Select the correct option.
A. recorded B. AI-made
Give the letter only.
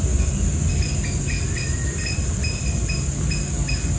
A